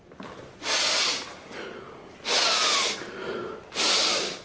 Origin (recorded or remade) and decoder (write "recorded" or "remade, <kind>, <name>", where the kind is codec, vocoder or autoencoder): recorded